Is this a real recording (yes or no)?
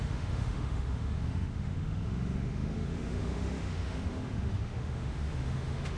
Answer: no